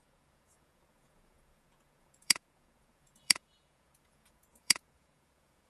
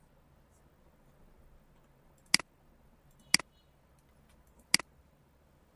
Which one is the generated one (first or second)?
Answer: first